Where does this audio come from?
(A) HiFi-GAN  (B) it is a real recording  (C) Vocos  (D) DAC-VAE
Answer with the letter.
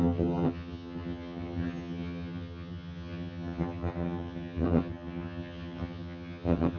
A